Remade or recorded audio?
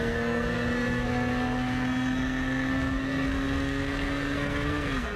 remade